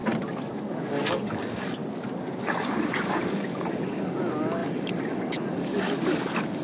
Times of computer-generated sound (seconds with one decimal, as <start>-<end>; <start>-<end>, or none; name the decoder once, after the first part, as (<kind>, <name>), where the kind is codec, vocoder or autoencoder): 0.5-1.8 (codec, DAC); 2.4-6.6